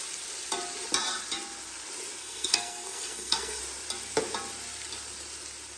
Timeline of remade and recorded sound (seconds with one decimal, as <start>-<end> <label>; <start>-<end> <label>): 0.0-2.2 recorded; 2.2-3.6 remade; 3.6-5.8 recorded